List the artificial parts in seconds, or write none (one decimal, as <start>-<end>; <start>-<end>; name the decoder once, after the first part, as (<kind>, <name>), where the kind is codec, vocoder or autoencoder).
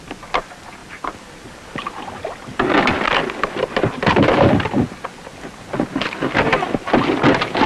none